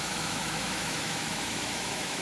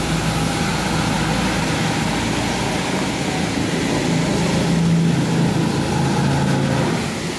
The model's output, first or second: first